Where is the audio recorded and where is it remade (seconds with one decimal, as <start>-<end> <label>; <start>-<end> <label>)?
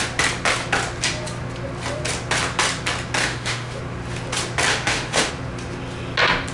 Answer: 0.0-3.2 recorded; 3.2-3.8 remade; 3.8-4.7 recorded; 4.7-5.3 remade; 5.3-6.5 recorded